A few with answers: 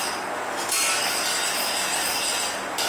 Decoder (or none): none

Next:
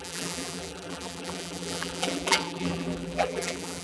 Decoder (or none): vocoder, BigVGAN v2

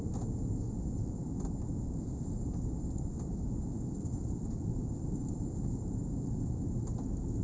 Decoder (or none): vocoder, BigVGAN v2